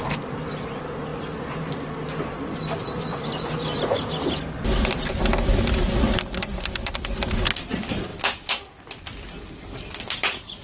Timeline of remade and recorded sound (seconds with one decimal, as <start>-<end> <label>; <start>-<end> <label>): 0.0-10.6 recorded